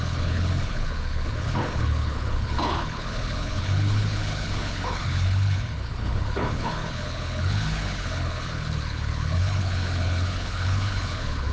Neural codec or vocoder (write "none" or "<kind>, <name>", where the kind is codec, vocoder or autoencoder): codec, HILCodec